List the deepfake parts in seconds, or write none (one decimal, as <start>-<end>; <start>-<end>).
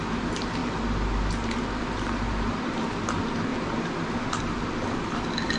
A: none